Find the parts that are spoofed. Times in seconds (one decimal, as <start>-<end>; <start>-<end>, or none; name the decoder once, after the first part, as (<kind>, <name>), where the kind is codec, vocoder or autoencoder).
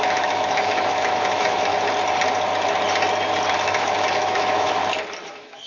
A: 0.0-1.7 (autoencoder, DAC-VAE); 3.5-4.8; 5.3-5.7